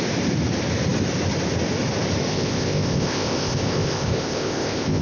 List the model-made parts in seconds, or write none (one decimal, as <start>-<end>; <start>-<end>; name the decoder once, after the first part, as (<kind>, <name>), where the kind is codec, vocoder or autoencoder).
2.3-5.0 (codec, ZipCodec)